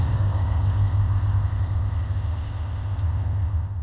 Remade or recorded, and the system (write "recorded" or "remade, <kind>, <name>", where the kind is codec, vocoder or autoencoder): remade, codec, ZipCodec